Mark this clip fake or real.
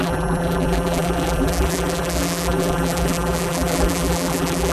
fake